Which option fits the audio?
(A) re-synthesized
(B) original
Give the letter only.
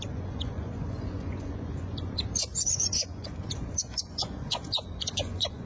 A